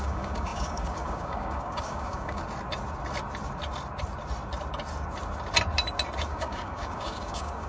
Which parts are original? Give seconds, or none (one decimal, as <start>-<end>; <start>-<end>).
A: 2.4-6.3